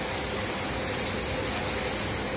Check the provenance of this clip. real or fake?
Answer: real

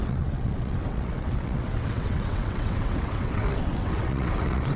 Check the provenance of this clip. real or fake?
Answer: fake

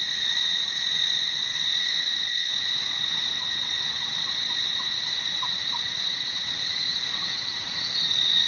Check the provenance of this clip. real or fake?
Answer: fake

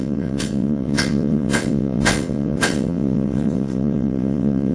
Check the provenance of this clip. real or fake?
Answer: fake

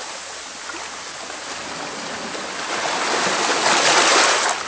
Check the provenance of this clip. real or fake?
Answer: real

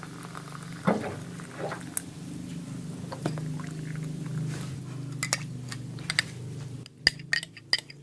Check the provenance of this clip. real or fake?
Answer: real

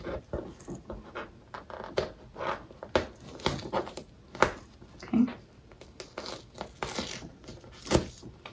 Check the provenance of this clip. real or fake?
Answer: real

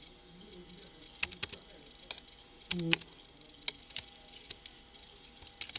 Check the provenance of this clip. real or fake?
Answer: real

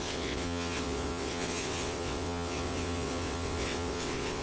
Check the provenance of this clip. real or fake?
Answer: fake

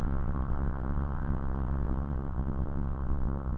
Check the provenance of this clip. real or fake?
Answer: fake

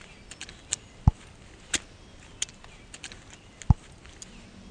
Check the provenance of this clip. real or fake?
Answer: real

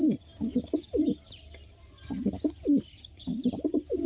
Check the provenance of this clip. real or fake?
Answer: real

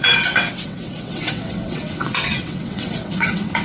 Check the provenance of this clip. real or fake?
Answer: fake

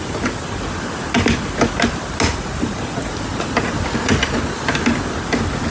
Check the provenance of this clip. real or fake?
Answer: real